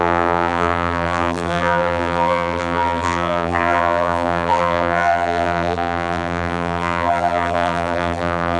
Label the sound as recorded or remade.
remade